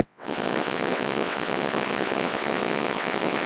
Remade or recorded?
remade